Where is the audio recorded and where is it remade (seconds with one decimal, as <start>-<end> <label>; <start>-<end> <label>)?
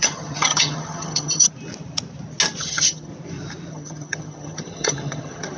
0.0-1.5 remade; 1.5-2.6 recorded; 2.6-3.1 remade; 3.1-3.7 recorded; 3.7-5.6 remade